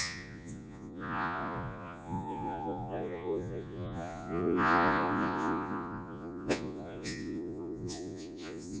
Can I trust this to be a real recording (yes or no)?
no